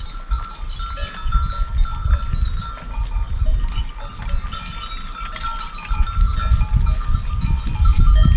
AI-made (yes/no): no